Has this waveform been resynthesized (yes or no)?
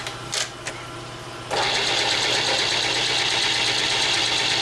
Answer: no